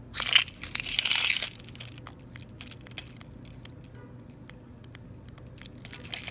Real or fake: real